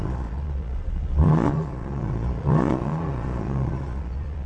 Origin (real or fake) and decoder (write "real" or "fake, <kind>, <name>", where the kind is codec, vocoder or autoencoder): fake, vocoder, Vocos